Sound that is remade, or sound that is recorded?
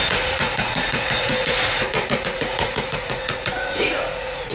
remade